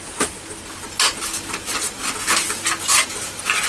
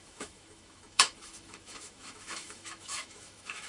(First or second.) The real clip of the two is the first